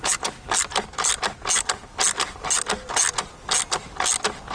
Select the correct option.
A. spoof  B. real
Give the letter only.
B